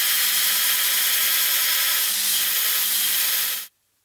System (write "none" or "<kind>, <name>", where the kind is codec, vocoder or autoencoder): none